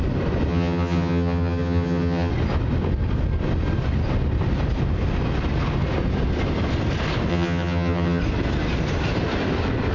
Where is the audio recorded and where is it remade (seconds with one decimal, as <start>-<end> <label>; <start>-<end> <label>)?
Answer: 0.0-0.5 recorded; 0.5-2.3 remade; 2.3-7.3 recorded; 7.3-8.2 remade; 8.2-9.9 recorded